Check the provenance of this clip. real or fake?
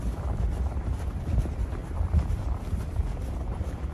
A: fake